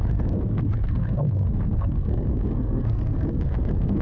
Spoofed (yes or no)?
yes